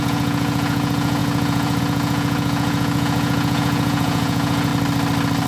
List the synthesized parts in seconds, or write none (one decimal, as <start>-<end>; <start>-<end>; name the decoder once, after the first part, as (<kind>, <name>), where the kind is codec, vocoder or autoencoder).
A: 0.0-4.7 (vocoder, Vocos)